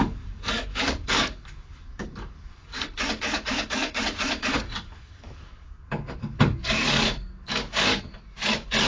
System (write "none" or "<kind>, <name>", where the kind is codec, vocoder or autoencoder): codec, DAC